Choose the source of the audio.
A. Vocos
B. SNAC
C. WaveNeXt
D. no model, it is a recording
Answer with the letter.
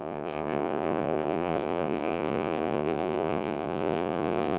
A